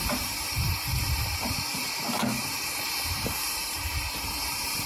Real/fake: fake